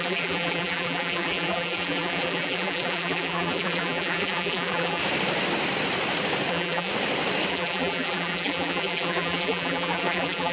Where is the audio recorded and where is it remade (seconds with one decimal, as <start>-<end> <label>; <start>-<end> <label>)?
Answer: 0.0-5.0 remade; 5.0-6.5 recorded; 6.5-6.9 remade; 6.9-7.5 recorded; 7.5-10.5 remade